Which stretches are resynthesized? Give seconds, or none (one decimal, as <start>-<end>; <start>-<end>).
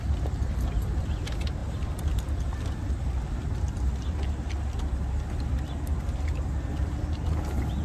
none